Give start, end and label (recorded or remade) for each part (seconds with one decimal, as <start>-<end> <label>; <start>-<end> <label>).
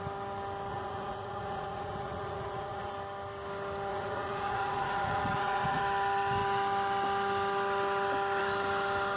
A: 0.0-0.7 recorded; 0.7-2.9 remade; 2.9-3.9 recorded; 3.9-5.8 remade; 5.8-9.2 recorded